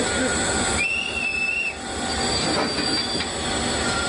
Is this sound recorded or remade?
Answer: recorded